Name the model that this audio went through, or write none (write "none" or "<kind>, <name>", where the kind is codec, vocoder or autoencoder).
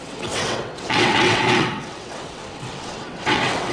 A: vocoder, WaveNeXt